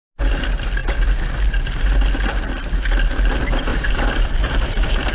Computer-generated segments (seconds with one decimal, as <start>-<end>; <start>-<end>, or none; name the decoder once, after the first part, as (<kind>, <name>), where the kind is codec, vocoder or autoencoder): 3.7-5.1 (vocoder, BigVGAN v2)